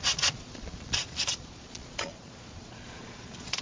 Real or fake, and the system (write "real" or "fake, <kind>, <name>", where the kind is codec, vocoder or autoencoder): fake, vocoder, Vocos